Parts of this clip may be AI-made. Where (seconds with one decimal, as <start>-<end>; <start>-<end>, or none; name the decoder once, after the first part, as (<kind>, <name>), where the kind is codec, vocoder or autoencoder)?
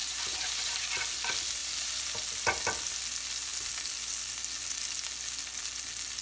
0.0-1.0 (vocoder, BigVGAN v2); 1.6-2.2